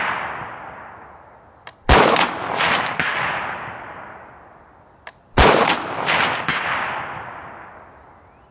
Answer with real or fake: real